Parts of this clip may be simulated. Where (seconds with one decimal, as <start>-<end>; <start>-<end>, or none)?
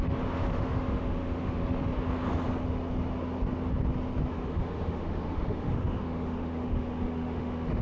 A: 0.0-1.9; 4.3-7.8